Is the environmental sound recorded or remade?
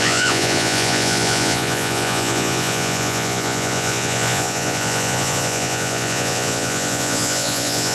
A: remade